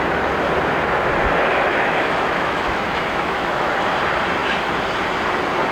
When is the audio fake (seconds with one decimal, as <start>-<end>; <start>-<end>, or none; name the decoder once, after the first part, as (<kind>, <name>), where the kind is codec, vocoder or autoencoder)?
1.7-3.7 (autoencoder, DAC-VAE)